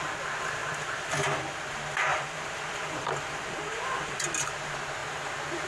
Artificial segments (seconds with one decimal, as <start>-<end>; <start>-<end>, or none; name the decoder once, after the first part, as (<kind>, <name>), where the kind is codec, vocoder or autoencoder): 0.6-1.6 (vocoder, BigVGAN v2); 2.1-4.4

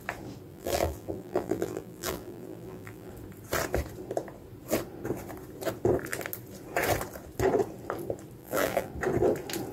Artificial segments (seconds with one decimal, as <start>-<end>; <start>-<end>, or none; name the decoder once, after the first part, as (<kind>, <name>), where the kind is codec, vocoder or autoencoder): 0.5-3.1 (vocoder, BigVGAN v2); 8.4-8.9

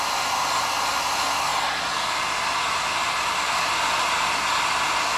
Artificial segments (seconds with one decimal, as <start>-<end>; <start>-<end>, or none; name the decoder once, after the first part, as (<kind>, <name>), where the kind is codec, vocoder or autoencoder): none

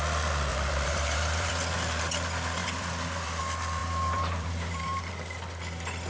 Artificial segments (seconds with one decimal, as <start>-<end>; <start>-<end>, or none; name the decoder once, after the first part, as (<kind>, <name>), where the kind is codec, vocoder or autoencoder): 0.5-1.5 (vocoder, BigVGAN v2); 2.6-3.4; 3.8-5.1

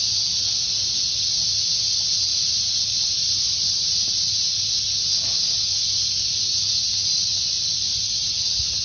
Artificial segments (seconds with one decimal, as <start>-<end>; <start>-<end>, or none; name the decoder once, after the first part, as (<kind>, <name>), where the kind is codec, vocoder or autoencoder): 2.3-4.7 (vocoder, BigVGAN v2); 7.3-8.8